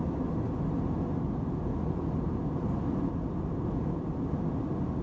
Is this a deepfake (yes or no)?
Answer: no